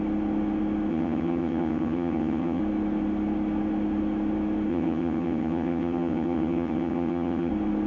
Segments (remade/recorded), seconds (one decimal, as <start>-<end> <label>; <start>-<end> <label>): 0.0-0.9 recorded; 0.9-2.6 remade; 2.6-4.7 recorded; 4.7-7.5 remade; 7.5-7.9 recorded